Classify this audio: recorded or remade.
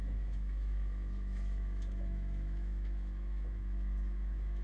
remade